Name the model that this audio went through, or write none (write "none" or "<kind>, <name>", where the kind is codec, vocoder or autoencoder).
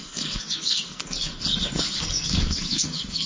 codec, SNAC